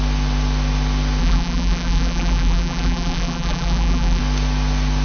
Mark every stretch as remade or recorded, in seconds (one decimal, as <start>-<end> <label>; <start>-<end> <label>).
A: 0.0-1.2 recorded; 1.2-4.2 remade; 4.2-5.0 recorded